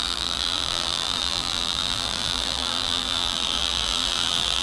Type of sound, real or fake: fake